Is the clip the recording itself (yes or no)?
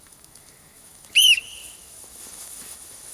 no